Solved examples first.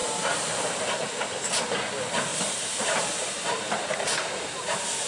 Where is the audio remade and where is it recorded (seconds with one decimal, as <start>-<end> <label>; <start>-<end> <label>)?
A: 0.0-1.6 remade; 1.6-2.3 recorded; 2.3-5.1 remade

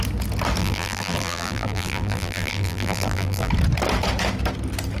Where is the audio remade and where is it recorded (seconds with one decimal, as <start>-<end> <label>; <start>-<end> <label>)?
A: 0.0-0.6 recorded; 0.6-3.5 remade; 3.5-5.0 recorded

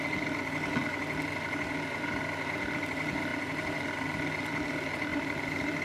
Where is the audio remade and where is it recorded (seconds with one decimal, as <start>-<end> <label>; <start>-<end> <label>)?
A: 0.0-5.1 recorded; 5.1-5.8 remade

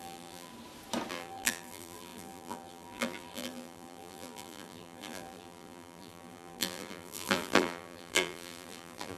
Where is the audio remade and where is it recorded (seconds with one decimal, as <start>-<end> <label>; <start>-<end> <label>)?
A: 0.0-0.5 remade; 0.5-1.1 recorded; 1.1-9.2 remade

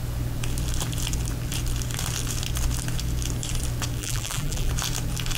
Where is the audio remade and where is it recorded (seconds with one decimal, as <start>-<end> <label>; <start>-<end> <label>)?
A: 0.0-4.0 recorded; 4.0-4.7 remade; 4.7-5.4 recorded

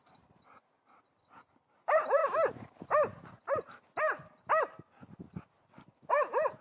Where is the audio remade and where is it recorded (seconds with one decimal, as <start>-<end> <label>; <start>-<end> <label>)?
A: 0.0-6.6 recorded